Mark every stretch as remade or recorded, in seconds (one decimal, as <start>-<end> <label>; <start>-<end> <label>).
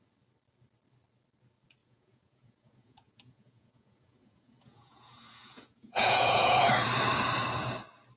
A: 0.0-1.8 recorded; 1.8-6.7 remade; 6.7-8.2 recorded